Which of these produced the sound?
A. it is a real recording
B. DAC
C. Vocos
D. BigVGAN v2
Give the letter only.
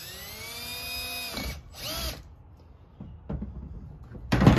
A